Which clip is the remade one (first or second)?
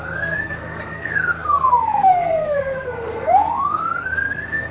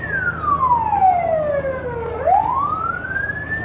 first